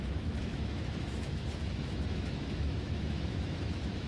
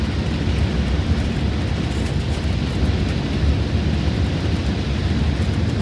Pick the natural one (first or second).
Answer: second